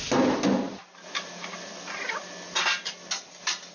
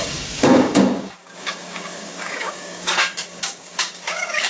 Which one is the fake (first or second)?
second